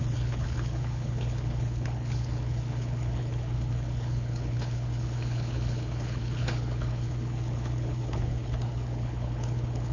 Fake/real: fake